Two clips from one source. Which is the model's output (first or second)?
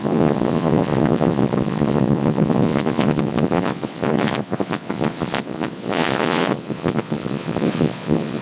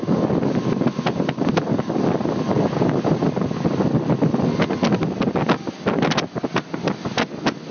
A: first